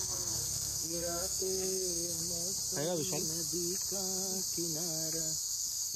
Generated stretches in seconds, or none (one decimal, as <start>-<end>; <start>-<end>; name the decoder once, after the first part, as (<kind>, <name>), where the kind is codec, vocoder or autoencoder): 0.0-2.2 (codec, SNAC); 5.2-6.0